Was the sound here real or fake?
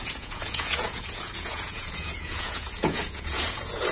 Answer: fake